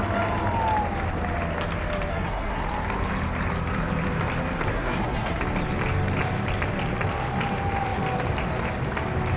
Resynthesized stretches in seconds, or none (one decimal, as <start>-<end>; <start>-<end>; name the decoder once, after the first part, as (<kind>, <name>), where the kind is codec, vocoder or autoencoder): 2.1-2.6 (codec, SNAC); 4.7-5.4